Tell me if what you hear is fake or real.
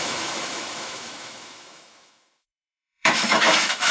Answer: fake